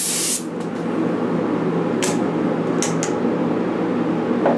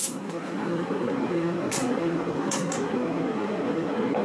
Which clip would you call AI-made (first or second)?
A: second